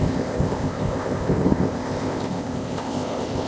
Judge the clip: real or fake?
fake